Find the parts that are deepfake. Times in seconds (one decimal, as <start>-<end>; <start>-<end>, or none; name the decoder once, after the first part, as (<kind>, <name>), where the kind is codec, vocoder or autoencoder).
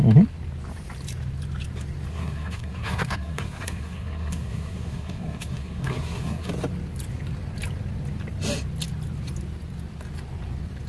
2.1-6.5 (codec, SNAC)